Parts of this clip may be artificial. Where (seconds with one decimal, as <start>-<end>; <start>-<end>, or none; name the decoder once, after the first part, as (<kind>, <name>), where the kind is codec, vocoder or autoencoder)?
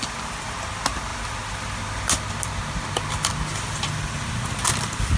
none